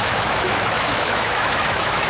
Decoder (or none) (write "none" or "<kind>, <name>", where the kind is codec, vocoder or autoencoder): autoencoder, DAC-VAE